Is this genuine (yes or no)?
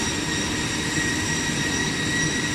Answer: yes